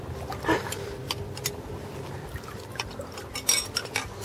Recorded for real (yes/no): yes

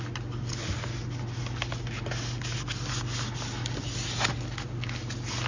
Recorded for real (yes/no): yes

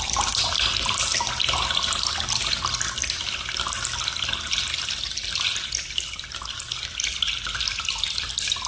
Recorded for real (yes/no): yes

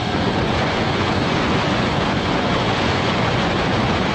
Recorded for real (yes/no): no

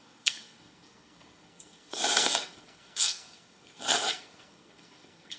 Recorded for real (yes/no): no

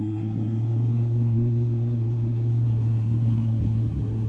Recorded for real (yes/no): no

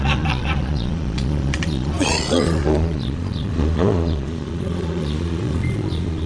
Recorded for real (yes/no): no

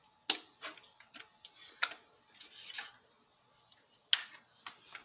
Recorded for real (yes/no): yes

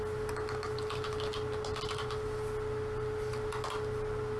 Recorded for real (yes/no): yes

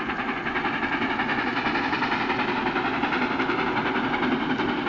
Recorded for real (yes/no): yes